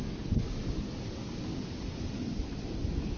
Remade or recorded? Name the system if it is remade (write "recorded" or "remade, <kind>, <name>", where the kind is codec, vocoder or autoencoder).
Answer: recorded